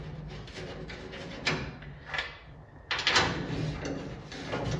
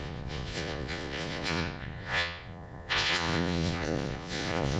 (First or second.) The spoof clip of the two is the second